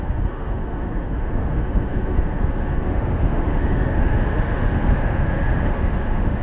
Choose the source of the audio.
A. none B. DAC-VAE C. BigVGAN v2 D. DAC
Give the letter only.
B